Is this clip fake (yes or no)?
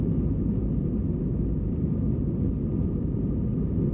no